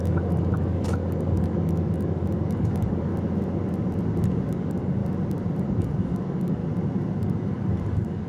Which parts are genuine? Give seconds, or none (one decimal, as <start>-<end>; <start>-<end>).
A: 3.1-4.5; 5.0-5.6; 6.6-7.2